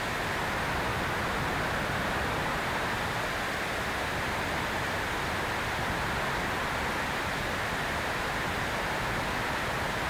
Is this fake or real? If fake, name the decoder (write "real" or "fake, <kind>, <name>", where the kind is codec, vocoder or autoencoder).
real